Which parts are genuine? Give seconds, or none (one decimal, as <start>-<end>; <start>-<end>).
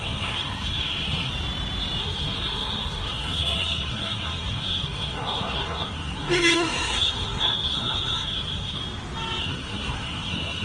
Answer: 1.3-2.0; 8.8-9.4